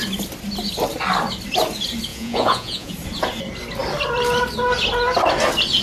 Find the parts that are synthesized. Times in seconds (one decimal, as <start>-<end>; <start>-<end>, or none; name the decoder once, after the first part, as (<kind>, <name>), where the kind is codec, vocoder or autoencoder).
2.1-2.9 (vocoder, Vocos)